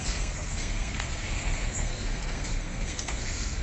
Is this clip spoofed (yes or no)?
yes